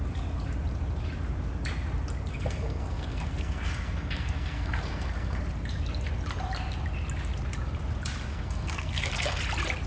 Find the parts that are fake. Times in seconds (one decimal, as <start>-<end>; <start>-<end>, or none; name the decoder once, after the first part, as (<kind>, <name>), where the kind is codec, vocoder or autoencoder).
2.3-5.4 (codec, SNAC); 8.3-9.4